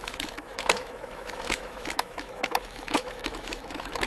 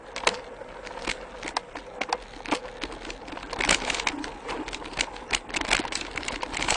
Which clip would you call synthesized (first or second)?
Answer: first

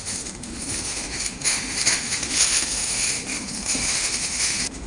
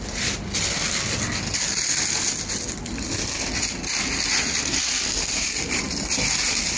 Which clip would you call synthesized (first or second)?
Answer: first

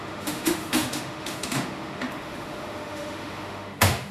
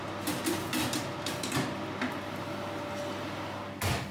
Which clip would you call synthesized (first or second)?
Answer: first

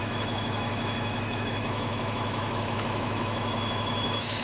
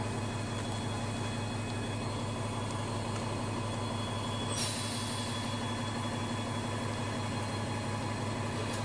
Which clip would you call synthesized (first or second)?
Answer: first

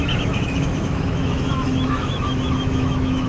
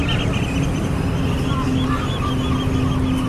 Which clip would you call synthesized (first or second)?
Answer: first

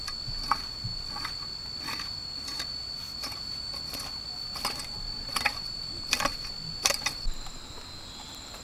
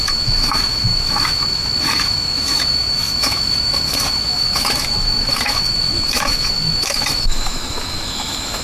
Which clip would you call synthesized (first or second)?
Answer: second